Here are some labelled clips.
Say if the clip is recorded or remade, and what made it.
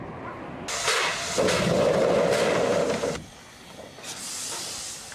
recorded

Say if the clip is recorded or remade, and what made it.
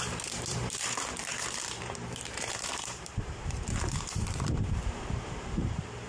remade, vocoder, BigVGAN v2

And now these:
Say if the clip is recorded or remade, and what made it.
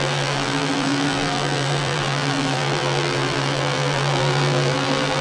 remade, vocoder, BigVGAN v2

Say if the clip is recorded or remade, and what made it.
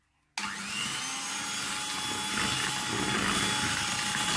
recorded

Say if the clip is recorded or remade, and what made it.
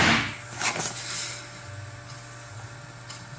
recorded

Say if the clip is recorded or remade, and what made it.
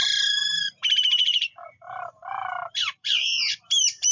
remade, vocoder, BigVGAN v2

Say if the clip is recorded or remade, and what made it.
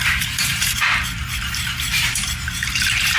remade, vocoder, BigVGAN v2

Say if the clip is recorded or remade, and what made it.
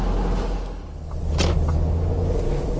recorded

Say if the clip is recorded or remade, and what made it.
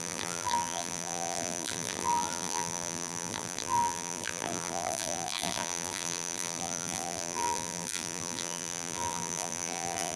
remade, vocoder, BigVGAN v2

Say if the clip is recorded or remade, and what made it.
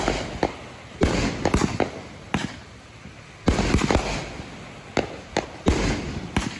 recorded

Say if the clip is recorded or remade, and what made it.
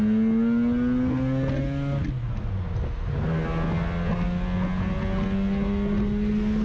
recorded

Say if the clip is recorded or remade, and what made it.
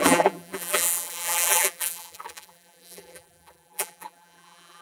remade, vocoder, BigVGAN v2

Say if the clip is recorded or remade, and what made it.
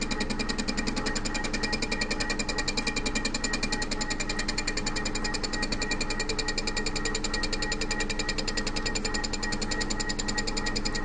recorded